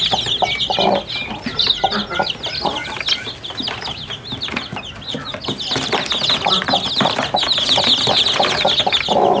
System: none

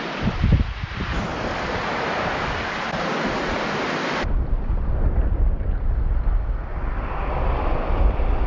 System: none